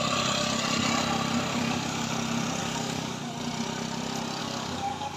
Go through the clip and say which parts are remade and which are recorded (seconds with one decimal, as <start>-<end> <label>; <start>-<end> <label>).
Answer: 0.0-1.5 recorded; 1.5-2.1 remade; 2.1-2.6 recorded; 2.6-3.3 remade; 3.3-4.4 recorded; 4.4-5.2 remade